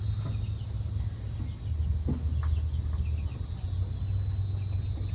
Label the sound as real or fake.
real